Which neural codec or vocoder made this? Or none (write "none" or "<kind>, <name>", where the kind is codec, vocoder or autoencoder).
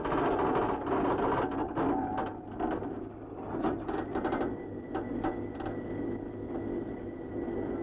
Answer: none